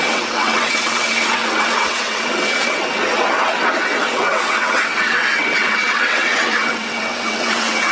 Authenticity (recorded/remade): remade